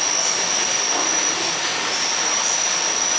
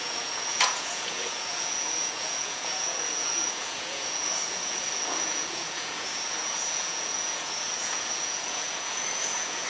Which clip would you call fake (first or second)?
second